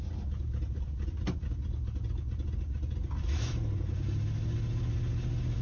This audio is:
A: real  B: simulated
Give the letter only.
A